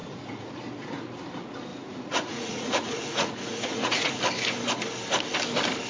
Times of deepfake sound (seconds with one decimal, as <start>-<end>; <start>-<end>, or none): 0.0-0.6; 1.7-4.2